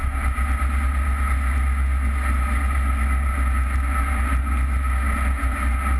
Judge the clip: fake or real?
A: real